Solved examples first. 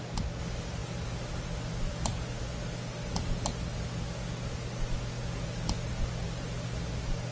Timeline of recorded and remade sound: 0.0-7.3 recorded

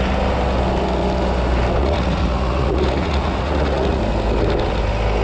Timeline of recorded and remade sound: 0.0-1.8 recorded; 1.8-4.0 remade; 4.0-5.2 recorded

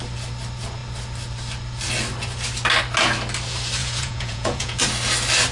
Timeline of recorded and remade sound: 0.0-3.8 recorded; 3.8-4.8 remade; 4.8-5.5 recorded

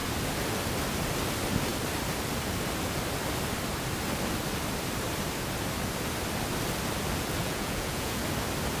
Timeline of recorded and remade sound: 0.0-7.4 recorded; 7.4-8.2 remade; 8.2-8.8 recorded

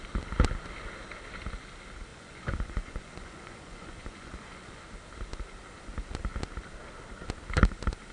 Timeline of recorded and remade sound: 0.0-2.1 recorded; 2.1-4.8 remade; 4.8-8.1 recorded